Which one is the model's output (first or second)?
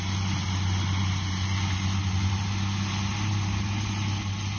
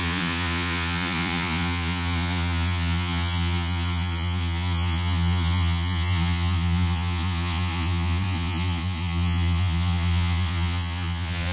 second